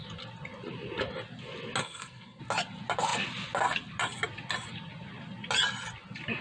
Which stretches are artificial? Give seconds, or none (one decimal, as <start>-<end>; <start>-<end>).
1.8-2.4